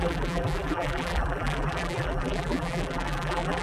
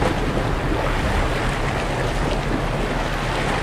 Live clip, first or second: second